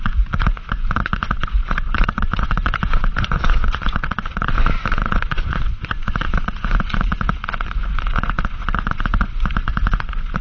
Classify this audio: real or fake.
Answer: fake